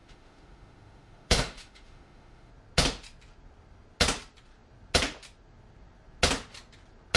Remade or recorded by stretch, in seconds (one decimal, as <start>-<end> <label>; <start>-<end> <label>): 0.0-2.5 remade; 2.5-7.2 recorded